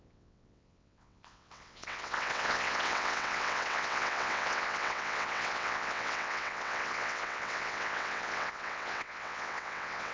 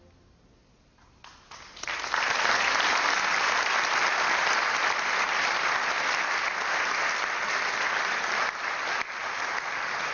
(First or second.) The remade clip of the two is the first